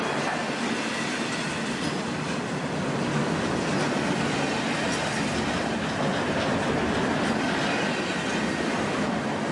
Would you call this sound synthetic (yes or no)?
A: no